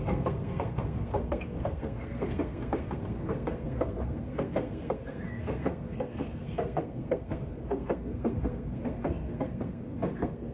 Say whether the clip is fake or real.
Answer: fake